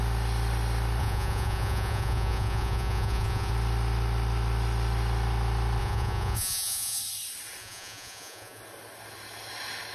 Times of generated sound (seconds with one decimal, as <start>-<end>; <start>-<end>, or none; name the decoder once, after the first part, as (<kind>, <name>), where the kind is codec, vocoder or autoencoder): 1.0-3.5 (vocoder, Vocos); 5.8-7.0; 7.6-8.6